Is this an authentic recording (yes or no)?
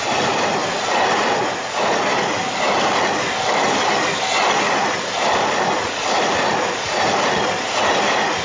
yes